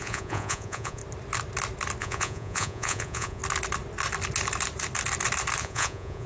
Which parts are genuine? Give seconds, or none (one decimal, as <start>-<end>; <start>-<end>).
1.0-2.0; 3.4-5.6